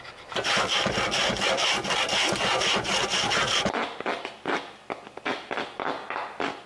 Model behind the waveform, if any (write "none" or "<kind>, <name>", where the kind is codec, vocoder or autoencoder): none